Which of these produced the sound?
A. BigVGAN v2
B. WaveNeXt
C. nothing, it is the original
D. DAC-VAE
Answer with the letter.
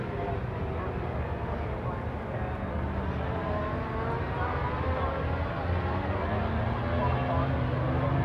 C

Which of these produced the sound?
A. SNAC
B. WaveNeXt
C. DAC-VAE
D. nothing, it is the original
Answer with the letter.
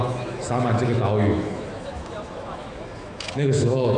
C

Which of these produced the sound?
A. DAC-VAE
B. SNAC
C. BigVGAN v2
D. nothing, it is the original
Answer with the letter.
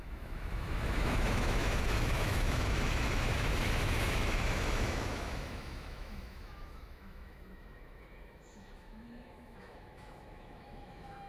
A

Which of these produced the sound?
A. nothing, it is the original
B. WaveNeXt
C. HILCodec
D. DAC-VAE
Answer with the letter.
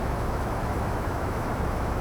D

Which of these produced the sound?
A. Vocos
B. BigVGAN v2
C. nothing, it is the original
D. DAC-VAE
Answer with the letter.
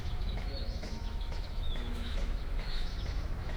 D